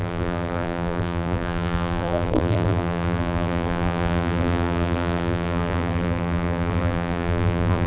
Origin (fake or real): fake